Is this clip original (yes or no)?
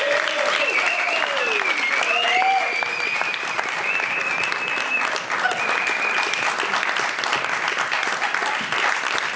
yes